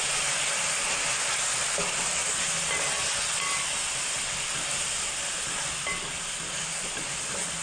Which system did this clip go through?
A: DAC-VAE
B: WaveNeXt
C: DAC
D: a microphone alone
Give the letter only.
D